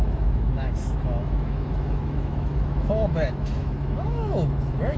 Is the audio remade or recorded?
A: remade